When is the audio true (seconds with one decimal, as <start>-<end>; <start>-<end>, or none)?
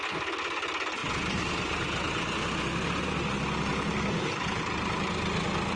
0.0-5.8